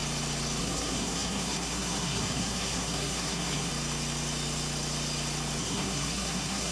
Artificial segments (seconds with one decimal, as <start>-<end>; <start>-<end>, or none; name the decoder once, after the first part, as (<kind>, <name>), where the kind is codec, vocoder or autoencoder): 0.6-3.7 (codec, SNAC); 5.6-6.7